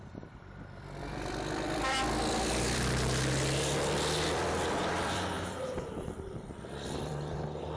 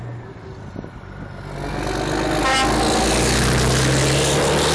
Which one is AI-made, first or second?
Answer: first